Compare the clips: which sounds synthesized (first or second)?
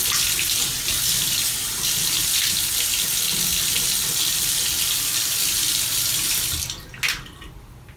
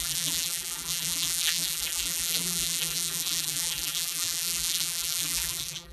second